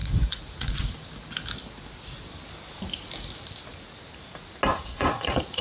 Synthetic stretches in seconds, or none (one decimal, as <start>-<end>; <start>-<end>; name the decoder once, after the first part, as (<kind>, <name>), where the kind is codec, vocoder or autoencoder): 0.0-1.1 (vocoder, Vocos); 4.7-5.6